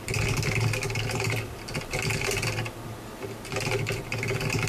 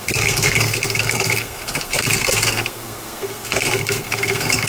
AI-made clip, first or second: second